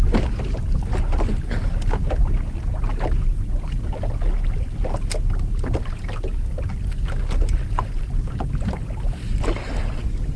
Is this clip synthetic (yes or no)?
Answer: no